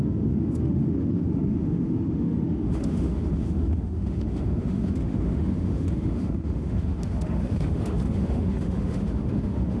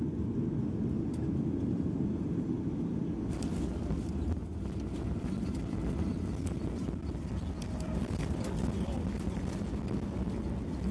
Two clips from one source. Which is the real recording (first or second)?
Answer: second